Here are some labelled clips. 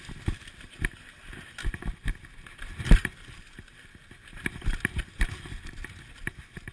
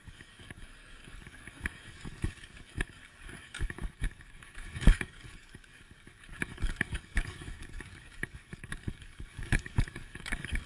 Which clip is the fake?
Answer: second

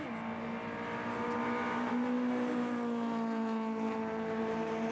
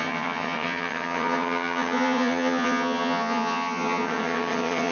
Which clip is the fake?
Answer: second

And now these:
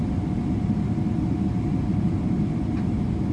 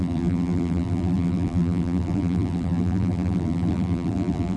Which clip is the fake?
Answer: second